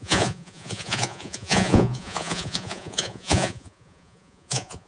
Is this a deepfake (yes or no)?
yes